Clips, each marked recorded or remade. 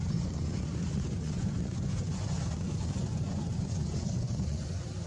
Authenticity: remade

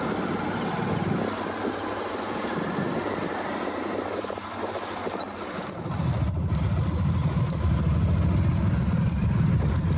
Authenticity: recorded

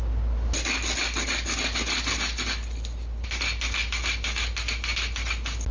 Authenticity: recorded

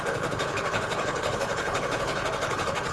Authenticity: remade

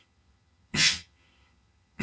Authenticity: remade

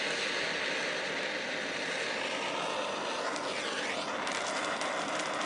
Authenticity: recorded